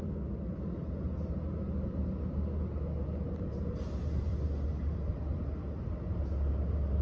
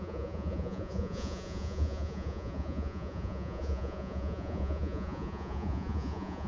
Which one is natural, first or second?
first